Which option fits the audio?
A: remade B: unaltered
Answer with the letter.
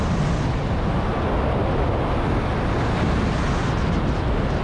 B